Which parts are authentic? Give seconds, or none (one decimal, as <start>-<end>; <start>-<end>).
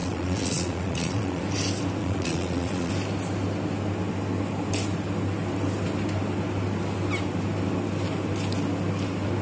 1.4-2.0; 2.9-9.4